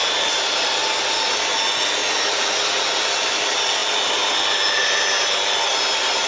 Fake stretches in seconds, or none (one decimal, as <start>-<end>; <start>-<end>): 0.0-0.7